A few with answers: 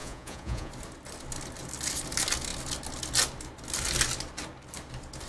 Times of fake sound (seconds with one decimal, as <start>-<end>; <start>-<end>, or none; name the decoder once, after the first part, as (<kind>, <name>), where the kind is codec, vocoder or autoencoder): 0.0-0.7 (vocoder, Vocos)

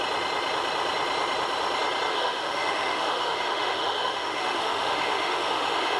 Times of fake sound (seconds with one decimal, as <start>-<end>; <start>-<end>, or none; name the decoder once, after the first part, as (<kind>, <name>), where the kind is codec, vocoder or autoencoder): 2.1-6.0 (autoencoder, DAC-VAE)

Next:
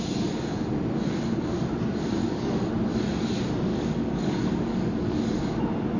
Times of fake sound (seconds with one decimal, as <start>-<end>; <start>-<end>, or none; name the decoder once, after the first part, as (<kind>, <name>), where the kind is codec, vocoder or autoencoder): 2.2-2.7 (codec, DAC); 3.7-5.6

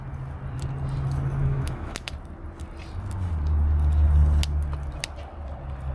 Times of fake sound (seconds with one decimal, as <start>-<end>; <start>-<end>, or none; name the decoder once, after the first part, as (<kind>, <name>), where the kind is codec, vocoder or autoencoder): 1.4-2.1 (autoencoder, DAC-VAE)